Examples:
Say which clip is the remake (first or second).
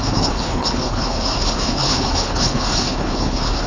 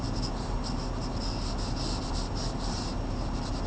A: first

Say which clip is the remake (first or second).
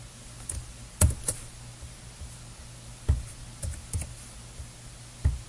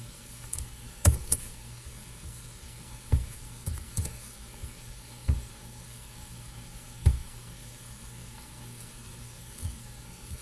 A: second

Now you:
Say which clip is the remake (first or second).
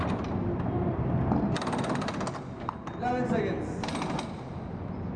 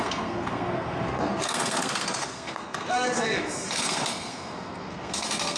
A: second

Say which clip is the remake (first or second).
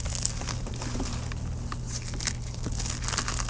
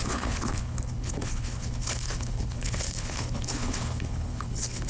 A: second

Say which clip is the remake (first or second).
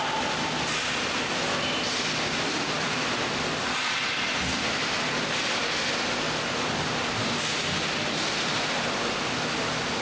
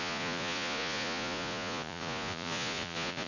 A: second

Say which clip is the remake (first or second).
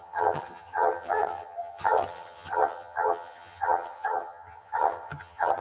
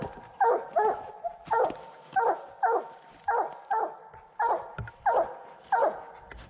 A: first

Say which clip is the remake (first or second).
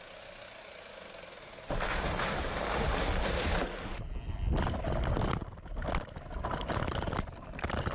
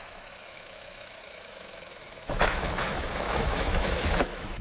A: second